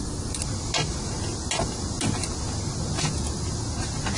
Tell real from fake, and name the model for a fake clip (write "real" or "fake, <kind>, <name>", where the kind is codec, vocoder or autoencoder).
real